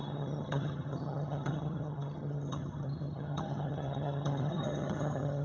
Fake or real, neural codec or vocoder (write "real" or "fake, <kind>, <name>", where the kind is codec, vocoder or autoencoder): fake, vocoder, HiFi-GAN